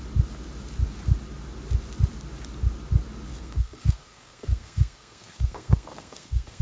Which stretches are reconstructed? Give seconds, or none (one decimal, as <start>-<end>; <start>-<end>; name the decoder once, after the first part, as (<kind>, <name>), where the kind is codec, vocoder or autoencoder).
3.3-6.6 (codec, SNAC)